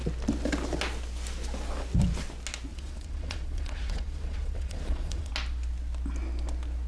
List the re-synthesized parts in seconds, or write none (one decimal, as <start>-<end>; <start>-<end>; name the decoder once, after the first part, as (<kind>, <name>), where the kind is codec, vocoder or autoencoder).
2.7-5.3 (vocoder, Vocos)